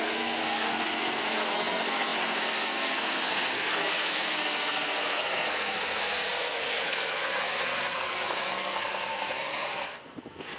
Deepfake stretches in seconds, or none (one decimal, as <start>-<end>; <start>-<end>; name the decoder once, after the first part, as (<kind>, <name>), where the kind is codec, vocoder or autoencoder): 0.0-10.6 (codec, SNAC)